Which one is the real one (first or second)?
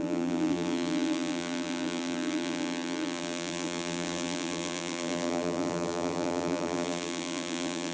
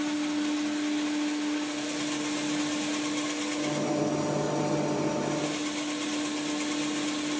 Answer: second